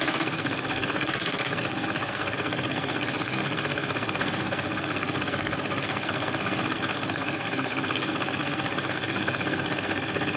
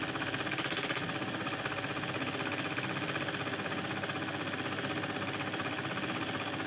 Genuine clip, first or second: second